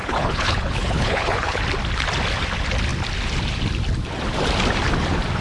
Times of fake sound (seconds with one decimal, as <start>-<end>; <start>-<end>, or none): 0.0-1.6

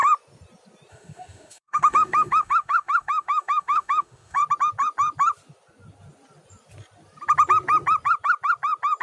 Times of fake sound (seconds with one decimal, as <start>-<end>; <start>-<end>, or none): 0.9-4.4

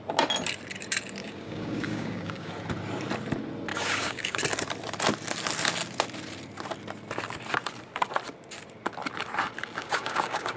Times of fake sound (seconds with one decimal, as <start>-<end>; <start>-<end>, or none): 1.2-2.5; 3.7-4.4; 9.8-10.6

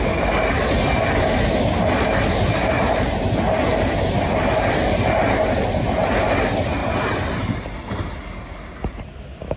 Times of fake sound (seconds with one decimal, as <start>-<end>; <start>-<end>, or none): none

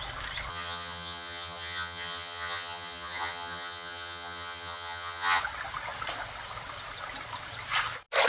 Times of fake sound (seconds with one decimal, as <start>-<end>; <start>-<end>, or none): 0.5-5.4

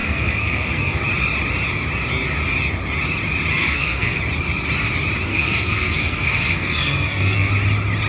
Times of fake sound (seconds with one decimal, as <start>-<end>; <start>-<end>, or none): 0.0-1.0; 3.6-4.2; 5.3-7.5

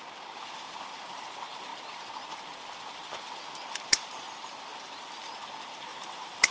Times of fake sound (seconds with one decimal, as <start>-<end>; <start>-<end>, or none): 5.9-6.5